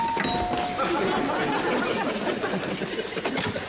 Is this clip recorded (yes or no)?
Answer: yes